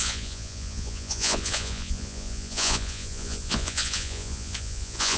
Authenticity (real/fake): fake